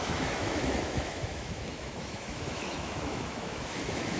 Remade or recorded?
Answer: remade